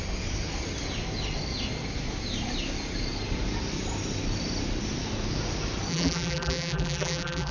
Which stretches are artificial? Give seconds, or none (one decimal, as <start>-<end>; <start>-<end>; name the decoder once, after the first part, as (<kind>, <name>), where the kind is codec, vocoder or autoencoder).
5.9-7.5 (vocoder, BigVGAN v2)